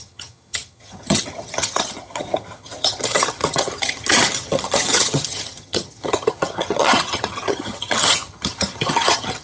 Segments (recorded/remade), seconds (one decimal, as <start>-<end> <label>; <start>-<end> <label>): 0.0-9.4 remade